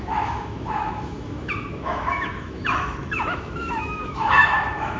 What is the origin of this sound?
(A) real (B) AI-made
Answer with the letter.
B